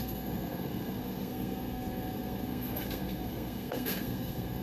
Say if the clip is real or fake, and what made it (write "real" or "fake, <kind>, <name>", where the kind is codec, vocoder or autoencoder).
fake, codec, SNAC